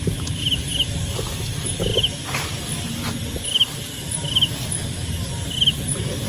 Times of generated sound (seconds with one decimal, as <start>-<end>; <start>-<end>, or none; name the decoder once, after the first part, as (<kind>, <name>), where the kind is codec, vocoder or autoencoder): none